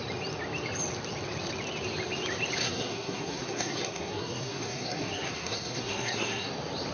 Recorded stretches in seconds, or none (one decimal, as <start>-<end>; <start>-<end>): 0.0-2.6; 6.5-6.9